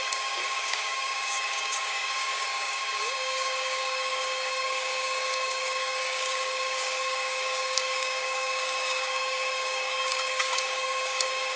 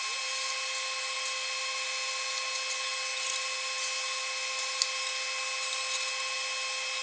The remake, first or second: first